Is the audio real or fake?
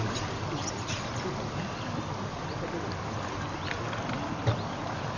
real